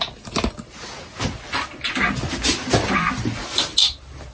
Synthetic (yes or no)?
no